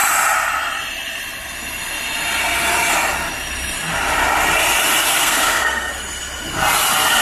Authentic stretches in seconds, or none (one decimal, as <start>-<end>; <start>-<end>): 0.0-5.1; 5.9-7.2